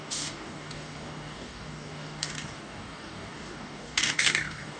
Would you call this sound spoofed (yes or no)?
yes